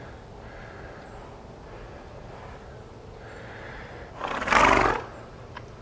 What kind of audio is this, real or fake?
real